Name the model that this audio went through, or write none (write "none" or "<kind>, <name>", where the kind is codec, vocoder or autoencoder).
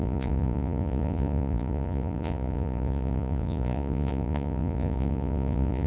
vocoder, Vocos